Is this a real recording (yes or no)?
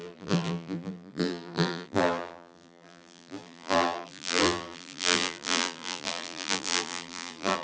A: no